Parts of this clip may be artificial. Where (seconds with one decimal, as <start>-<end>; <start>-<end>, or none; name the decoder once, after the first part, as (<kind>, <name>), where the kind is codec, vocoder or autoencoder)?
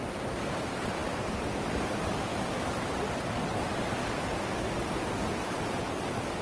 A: 2.3-2.9 (autoencoder, DAC-VAE)